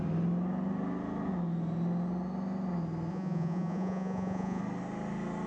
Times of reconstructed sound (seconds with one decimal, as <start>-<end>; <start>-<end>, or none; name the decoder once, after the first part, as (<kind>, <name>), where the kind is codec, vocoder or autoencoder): 3.1-4.6 (vocoder, Vocos)